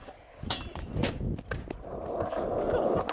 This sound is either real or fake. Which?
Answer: real